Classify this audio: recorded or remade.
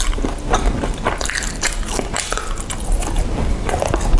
recorded